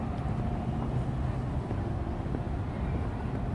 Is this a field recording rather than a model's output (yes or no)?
yes